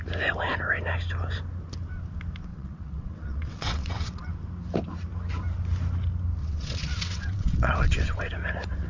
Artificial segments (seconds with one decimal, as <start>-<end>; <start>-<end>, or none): 2.5-4.3; 6.4-8.2